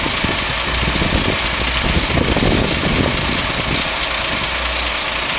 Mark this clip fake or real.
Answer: real